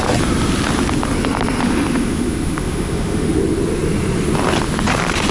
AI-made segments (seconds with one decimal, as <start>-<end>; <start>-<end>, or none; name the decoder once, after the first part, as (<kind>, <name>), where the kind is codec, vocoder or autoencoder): 1.6-3.4 (autoencoder, DAC-VAE)